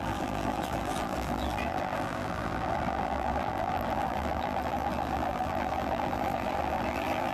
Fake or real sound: fake